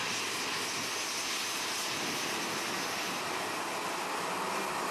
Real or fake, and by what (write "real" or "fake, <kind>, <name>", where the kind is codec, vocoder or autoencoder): real